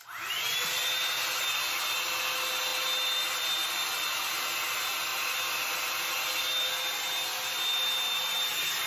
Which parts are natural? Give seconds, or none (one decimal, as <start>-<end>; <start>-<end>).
0.0-8.9